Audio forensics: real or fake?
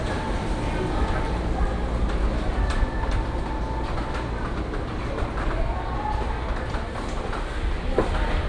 real